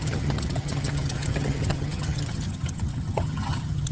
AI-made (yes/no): yes